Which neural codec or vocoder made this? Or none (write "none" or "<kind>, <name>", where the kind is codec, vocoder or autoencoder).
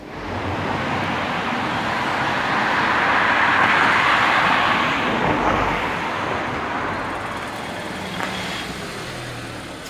none